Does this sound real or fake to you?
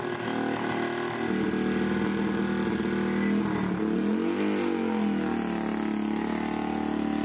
real